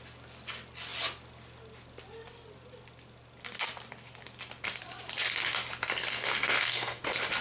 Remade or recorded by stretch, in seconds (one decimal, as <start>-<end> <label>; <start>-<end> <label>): 0.0-6.1 recorded; 6.1-7.0 remade; 7.0-7.4 recorded